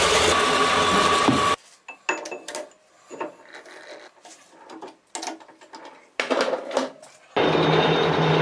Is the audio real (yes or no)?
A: yes